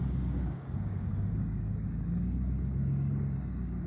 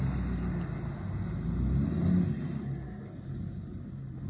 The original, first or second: second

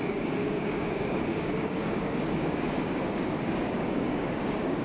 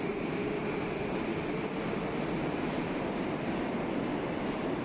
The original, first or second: second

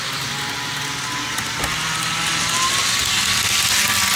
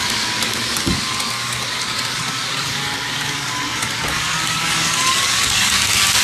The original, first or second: first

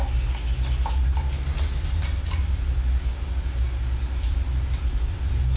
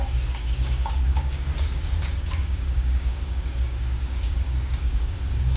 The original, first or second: first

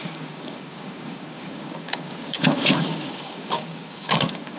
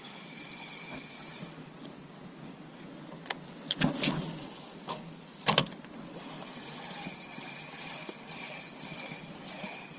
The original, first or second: second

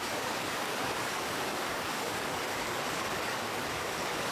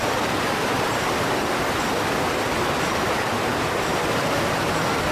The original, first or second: second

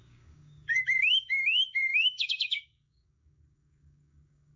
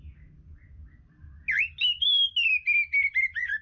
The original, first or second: second